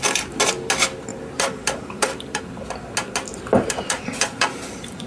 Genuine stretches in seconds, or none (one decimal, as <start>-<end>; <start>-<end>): 0.0-1.1; 2.4-3.3